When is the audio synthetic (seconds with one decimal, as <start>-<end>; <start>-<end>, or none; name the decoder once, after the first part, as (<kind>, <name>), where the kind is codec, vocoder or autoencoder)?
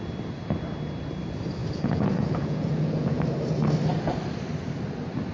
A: 1.6-3.2 (vocoder, Vocos)